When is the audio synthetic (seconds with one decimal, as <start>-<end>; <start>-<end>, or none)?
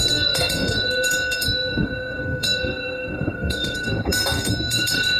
0.0-5.2